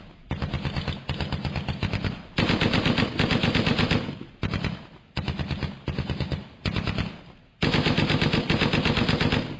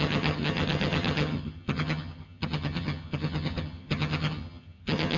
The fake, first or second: second